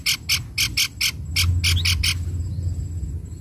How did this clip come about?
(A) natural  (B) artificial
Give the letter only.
A